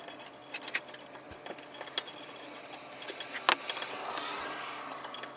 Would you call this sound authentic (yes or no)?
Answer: yes